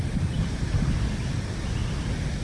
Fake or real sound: real